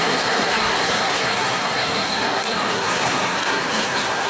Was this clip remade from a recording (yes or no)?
yes